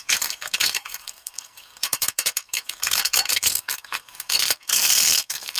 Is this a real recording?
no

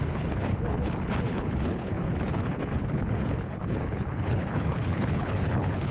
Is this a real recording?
no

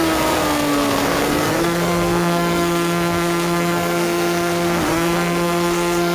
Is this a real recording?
no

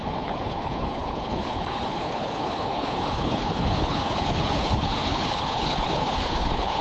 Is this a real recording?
no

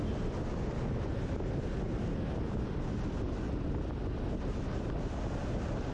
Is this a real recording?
yes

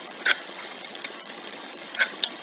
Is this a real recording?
no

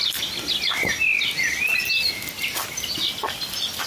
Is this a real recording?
yes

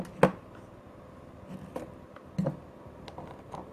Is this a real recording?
yes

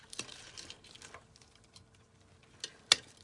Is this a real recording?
yes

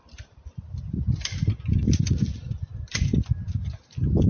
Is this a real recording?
yes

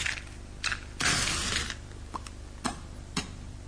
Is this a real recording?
yes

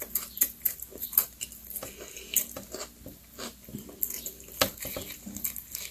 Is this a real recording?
yes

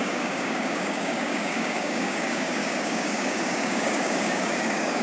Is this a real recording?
no